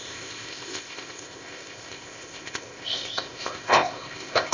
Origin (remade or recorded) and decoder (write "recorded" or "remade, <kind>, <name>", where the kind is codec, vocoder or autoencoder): remade, codec, ZipCodec